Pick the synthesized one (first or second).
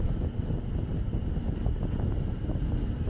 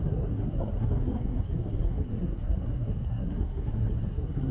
second